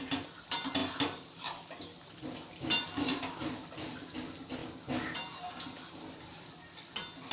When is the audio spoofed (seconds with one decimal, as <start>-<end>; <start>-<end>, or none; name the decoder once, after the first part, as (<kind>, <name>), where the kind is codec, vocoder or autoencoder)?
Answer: none